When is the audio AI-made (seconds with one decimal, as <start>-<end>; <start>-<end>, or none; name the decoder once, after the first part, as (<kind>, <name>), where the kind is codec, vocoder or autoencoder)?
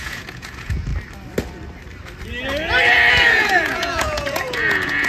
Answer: 0.0-0.9 (vocoder, Vocos); 3.1-5.1